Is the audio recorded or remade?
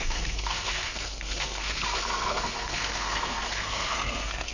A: remade